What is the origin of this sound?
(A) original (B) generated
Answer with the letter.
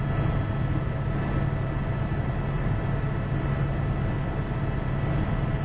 A